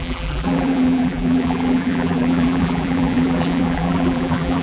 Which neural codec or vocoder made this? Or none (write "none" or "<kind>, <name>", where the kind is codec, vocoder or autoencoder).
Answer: vocoder, BigVGAN v2